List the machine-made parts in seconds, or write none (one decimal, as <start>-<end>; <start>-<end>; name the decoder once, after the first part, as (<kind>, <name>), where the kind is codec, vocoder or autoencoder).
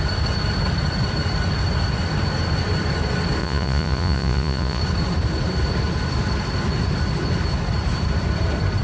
3.4-4.8 (vocoder, Vocos)